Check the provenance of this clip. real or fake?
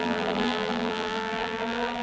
fake